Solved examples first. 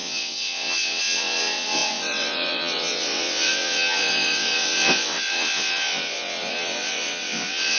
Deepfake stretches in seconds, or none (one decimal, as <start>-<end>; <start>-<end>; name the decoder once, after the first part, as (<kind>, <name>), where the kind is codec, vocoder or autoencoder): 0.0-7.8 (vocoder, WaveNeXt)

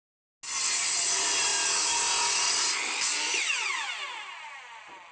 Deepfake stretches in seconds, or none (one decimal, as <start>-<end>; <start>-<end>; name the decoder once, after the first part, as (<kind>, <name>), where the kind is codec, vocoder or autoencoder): none

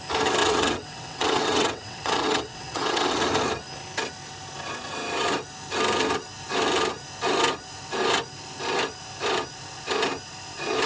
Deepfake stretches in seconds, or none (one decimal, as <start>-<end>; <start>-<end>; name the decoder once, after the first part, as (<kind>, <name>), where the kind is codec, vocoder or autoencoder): 0.4-3.2 (vocoder, WaveNeXt)

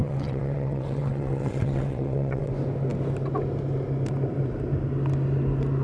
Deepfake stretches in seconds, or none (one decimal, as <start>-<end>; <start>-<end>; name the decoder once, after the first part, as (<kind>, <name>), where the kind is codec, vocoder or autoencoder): 0.0-2.5 (vocoder, WaveNeXt)

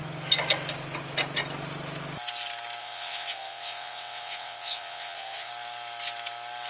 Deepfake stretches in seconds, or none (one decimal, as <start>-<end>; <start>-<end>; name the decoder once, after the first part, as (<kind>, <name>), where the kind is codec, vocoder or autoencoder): 2.8-5.5 (vocoder, WaveNeXt)

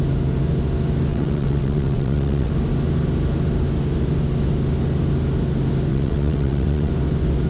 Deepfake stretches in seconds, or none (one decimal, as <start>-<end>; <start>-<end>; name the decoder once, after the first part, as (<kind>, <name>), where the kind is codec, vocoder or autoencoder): 1.1-2.5 (vocoder, WaveNeXt); 5.9-6.9

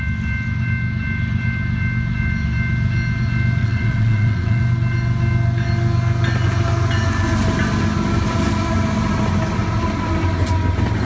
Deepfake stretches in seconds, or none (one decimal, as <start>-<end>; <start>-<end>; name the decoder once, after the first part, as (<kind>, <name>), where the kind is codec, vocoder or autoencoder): 3.6-4.6 (vocoder, WaveNeXt)